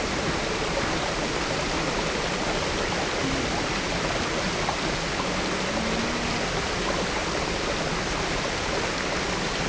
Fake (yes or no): no